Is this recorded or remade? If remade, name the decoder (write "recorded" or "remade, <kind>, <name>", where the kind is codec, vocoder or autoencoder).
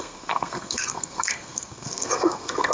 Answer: remade, codec, SNAC